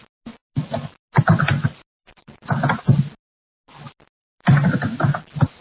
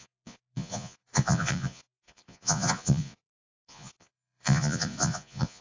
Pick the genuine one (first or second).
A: first